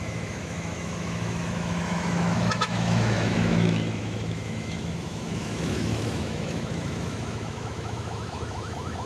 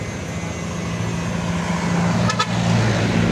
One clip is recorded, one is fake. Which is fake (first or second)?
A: first